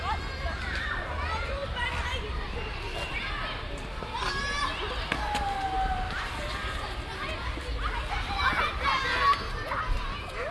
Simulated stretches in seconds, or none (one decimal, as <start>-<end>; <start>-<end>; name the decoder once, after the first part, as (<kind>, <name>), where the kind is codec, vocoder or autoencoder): none